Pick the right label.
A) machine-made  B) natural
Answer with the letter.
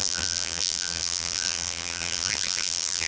A